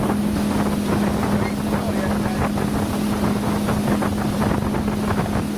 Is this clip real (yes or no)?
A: yes